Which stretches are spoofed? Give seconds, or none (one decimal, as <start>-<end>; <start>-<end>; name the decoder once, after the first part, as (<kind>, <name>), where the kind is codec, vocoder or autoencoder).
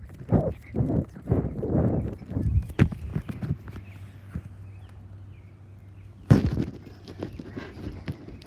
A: none